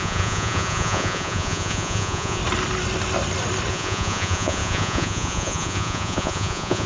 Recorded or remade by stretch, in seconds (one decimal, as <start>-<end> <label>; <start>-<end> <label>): 0.0-2.4 remade; 2.4-3.7 recorded; 3.7-6.9 remade